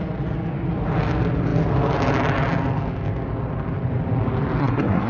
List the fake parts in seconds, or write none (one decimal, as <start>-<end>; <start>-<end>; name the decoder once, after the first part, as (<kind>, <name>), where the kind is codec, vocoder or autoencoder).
4.6-5.1 (codec, SNAC)

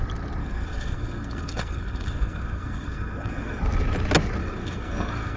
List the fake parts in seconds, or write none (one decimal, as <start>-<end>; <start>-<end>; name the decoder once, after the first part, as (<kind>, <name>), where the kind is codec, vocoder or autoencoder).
0.4-3.6 (codec, SNAC); 4.4-5.4